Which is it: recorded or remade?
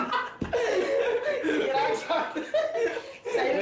recorded